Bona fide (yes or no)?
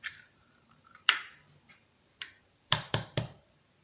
no